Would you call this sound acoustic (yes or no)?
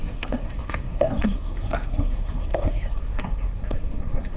no